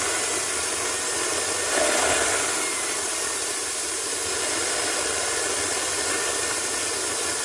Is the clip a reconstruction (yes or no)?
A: no